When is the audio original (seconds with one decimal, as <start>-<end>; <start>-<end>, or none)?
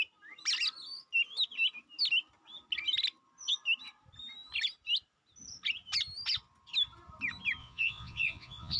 0.0-7.6